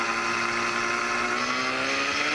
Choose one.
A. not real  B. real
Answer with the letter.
B